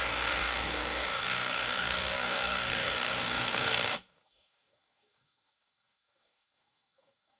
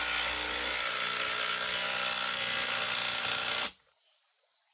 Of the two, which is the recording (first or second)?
second